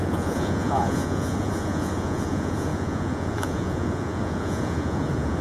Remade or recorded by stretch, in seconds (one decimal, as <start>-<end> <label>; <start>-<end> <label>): 0.0-5.4 remade